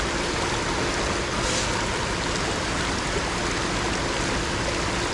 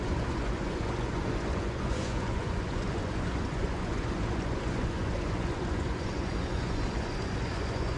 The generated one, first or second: second